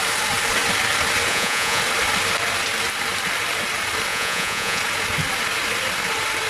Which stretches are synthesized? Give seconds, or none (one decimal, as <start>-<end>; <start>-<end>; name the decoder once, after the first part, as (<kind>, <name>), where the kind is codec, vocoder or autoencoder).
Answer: 1.3-1.8 (vocoder, Vocos); 4.1-4.8